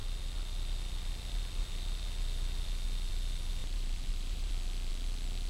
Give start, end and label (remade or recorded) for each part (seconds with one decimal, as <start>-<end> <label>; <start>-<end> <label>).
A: 0.0-3.6 recorded; 3.6-4.5 remade; 4.5-5.5 recorded